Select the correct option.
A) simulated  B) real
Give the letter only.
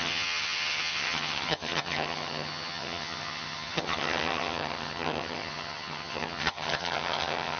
A